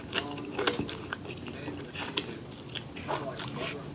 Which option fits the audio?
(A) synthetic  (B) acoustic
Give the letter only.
B